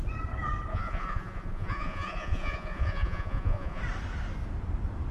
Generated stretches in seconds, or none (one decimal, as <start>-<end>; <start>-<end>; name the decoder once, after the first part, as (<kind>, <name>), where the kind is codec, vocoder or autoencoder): 0.7-3.8 (vocoder, Vocos)